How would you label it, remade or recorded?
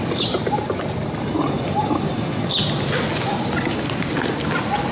recorded